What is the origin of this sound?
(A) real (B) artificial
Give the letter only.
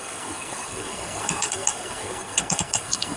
B